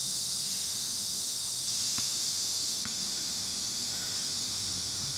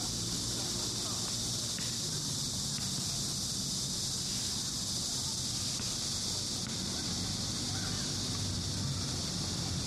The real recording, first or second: second